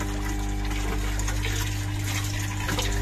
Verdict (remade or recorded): recorded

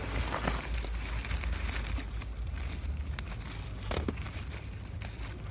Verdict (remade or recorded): recorded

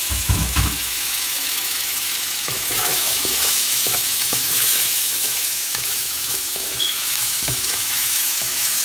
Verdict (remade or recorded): remade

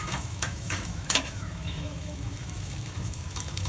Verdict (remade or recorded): remade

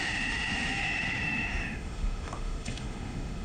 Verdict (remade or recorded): remade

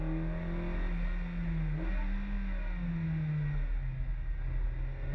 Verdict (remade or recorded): recorded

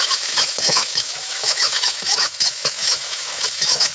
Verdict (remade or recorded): remade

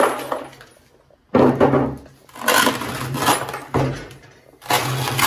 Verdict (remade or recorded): recorded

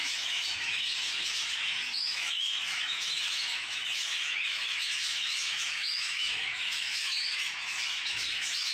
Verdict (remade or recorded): remade